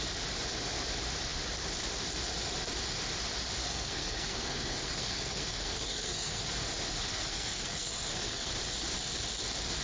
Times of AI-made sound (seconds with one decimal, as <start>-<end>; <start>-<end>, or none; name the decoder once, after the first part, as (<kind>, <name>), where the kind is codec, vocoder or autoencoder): 3.6-6.4 (codec, SNAC); 7.1-8.5